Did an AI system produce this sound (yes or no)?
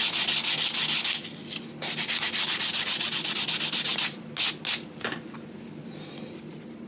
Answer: no